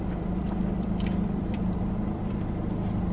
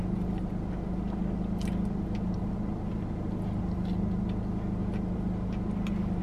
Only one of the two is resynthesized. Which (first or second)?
first